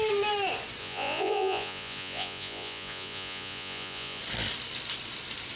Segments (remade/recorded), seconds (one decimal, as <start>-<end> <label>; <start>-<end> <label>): 0.0-0.8 recorded; 0.8-4.2 remade; 4.2-5.6 recorded